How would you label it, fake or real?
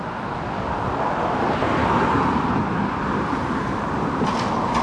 real